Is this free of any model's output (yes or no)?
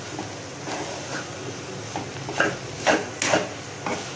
yes